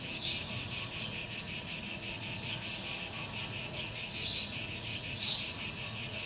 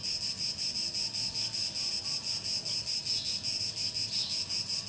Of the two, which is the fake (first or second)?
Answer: first